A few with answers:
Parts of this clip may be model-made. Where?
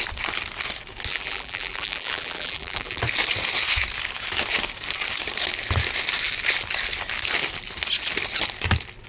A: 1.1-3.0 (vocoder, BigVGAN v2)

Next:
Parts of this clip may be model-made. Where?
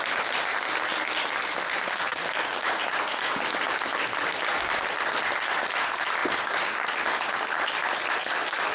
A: 6.2-7.5 (vocoder, BigVGAN v2)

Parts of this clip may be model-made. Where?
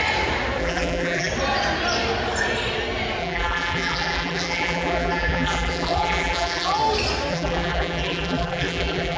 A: 0.6-1.3 (vocoder, BigVGAN v2); 3.2-6.8; 7.3-9.2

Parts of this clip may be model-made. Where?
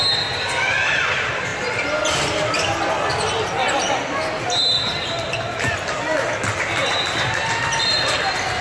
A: none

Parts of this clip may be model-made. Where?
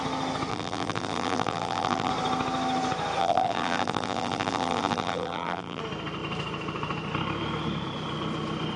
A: 0.5-2.1 (vocoder, BigVGAN v2); 3.2-5.8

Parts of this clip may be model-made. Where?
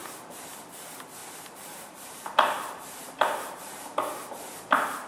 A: 0.0-0.6 (vocoder, BigVGAN v2); 1.2-4.3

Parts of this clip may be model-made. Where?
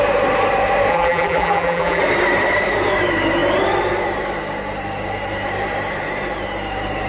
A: 0.9-2.0 (vocoder, BigVGAN v2)